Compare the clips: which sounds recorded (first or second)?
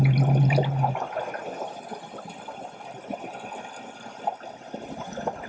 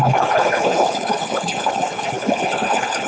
first